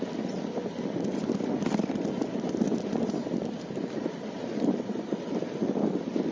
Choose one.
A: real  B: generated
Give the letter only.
A